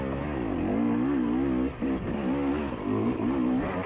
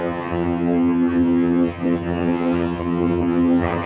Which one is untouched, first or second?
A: first